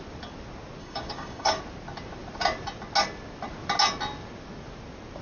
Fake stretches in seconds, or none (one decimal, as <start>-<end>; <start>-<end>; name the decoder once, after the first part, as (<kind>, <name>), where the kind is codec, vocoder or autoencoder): 0.8-1.6 (codec, DAC)